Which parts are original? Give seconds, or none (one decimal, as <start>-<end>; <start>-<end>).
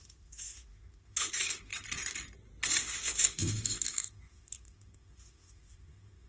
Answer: 1.7-2.8